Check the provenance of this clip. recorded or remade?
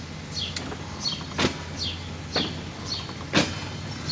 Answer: recorded